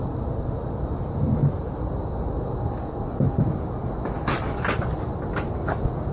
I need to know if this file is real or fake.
real